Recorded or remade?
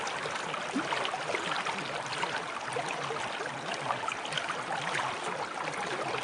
recorded